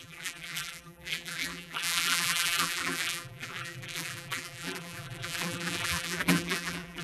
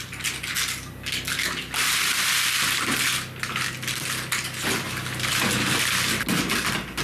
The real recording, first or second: second